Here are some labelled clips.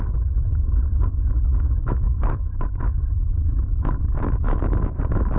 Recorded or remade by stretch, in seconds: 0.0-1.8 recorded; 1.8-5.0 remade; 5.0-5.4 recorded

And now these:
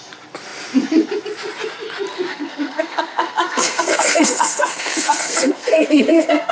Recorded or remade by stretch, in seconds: 0.0-2.3 recorded; 2.3-6.5 remade

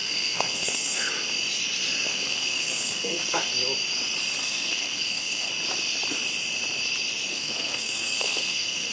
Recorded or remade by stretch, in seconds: 0.0-1.1 remade; 1.1-2.1 recorded; 2.1-3.5 remade; 3.5-4.4 recorded; 4.4-5.5 remade; 5.5-7.3 recorded; 7.3-8.9 remade

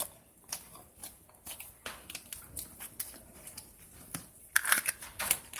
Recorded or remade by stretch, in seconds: 0.0-5.6 recorded

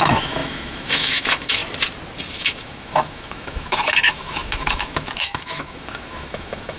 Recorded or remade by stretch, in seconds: 0.0-1.6 remade; 1.6-2.3 recorded; 2.3-6.8 remade

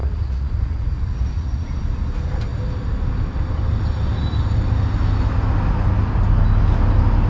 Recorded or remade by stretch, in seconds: 0.0-1.7 remade; 1.7-7.3 recorded

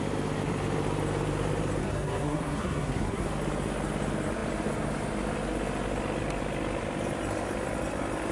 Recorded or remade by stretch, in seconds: 0.0-1.8 recorded; 1.8-3.3 remade; 3.3-8.3 recorded